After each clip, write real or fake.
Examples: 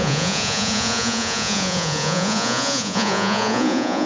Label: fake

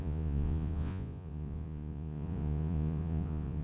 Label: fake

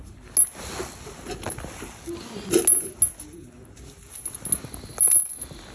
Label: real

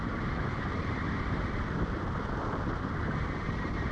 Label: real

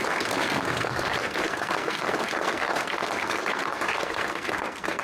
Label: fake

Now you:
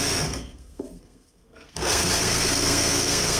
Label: fake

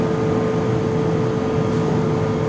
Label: real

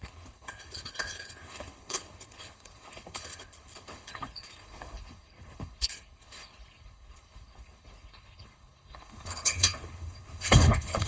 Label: fake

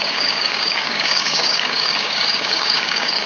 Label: fake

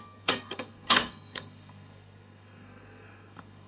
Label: fake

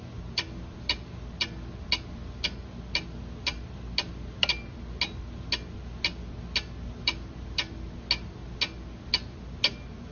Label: real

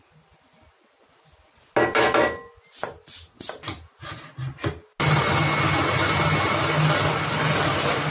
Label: real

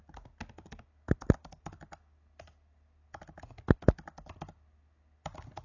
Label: real